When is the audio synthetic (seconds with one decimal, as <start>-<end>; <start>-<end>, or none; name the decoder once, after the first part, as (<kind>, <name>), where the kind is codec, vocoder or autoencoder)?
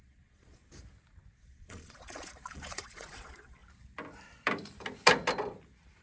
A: 0.0-0.6 (vocoder, Vocos); 1.4-3.6